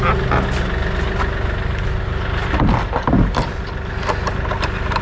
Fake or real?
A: real